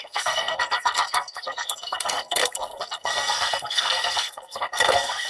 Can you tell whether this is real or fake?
fake